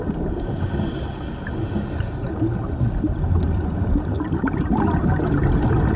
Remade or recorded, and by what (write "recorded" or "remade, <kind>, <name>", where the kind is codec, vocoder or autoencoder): recorded